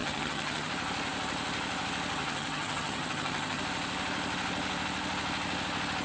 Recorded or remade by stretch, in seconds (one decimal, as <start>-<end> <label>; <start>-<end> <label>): 0.0-0.7 remade; 0.7-2.2 recorded; 2.2-3.6 remade; 3.6-6.0 recorded